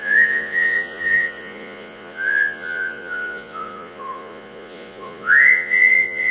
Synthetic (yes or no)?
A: yes